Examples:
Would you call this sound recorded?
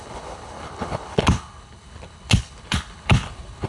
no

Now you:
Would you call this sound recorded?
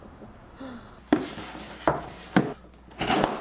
yes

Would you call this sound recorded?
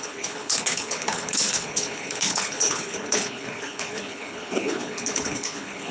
no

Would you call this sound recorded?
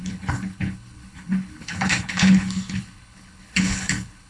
no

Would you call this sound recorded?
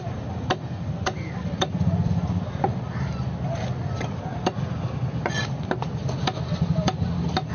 yes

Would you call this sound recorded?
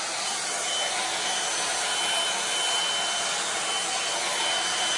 yes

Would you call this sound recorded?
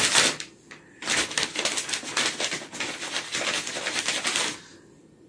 yes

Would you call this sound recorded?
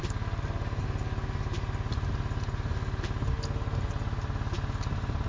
yes